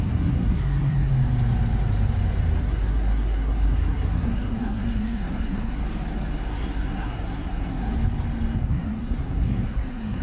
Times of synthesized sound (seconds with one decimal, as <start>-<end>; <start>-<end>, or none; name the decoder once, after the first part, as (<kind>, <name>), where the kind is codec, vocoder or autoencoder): 0.0-1.1 (codec, SNAC); 2.6-5.8; 6.4-7.9; 8.6-10.2